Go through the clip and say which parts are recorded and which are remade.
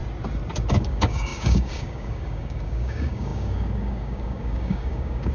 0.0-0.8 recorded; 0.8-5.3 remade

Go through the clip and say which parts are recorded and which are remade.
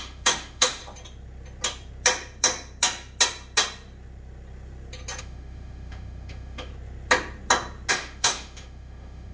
0.0-0.8 remade; 0.8-5.2 recorded; 5.2-6.7 remade; 6.7-7.9 recorded; 7.9-9.3 remade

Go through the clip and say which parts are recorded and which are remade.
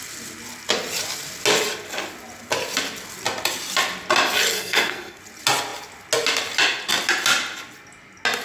0.0-4.5 recorded; 4.5-5.2 remade; 5.2-8.4 recorded